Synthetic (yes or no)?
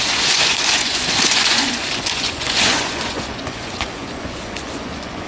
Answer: yes